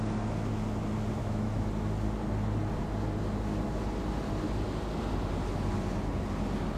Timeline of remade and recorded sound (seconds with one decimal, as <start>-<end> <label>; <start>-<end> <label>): 0.0-1.2 recorded; 1.2-1.7 remade; 1.7-6.8 recorded